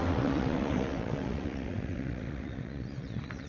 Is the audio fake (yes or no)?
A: yes